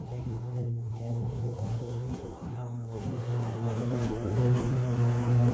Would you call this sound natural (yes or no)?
no